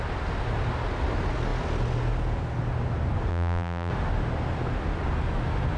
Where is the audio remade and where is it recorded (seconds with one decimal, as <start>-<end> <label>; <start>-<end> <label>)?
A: 0.0-3.3 recorded; 3.3-3.9 remade; 3.9-5.8 recorded